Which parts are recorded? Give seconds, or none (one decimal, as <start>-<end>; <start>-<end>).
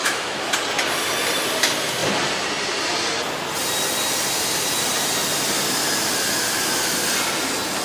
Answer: 0.5-7.8